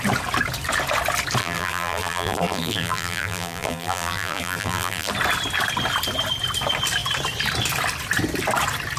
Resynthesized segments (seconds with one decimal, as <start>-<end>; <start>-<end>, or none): 1.4-5.1